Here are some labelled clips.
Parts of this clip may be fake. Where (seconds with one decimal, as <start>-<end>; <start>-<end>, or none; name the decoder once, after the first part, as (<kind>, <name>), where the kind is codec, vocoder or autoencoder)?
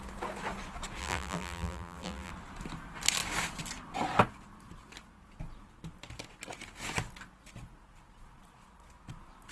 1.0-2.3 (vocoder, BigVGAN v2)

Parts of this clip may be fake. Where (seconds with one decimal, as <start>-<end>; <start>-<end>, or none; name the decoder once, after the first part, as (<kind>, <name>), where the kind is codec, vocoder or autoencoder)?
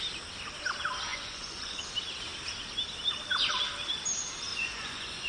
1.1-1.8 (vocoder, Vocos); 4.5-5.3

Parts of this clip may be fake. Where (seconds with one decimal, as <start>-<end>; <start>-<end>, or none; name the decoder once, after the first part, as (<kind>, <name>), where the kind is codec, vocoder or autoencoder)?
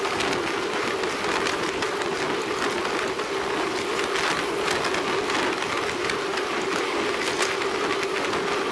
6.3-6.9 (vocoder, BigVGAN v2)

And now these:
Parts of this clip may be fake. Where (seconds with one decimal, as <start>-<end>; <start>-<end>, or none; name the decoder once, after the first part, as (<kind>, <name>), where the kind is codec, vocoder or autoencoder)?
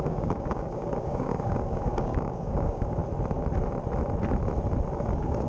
0.0-3.0 (codec, DAC); 5.1-5.5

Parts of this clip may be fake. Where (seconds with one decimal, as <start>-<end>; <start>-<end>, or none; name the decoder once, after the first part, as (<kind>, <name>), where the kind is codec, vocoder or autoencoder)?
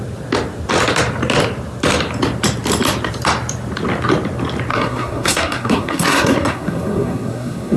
4.7-7.8 (codec, SNAC)